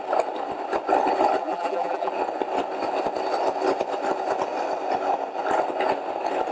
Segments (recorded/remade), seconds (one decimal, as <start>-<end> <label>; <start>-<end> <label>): 0.0-1.4 recorded; 1.4-2.1 remade; 2.1-6.5 recorded